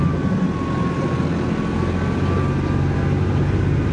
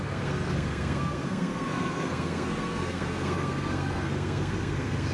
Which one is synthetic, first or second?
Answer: second